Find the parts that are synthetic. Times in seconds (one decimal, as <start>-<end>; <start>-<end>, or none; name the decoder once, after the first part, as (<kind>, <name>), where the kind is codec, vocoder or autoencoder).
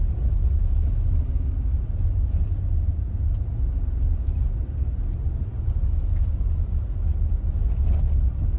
none